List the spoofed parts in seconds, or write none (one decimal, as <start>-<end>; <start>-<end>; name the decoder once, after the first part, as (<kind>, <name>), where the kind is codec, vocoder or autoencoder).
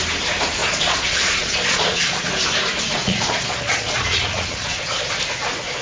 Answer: 0.6-2.3 (vocoder, Vocos); 3.0-5.1